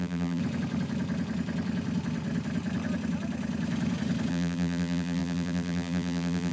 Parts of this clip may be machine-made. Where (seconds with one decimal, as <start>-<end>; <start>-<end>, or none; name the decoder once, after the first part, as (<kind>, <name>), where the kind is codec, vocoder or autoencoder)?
0.0-0.4 (vocoder, BigVGAN v2); 4.3-6.5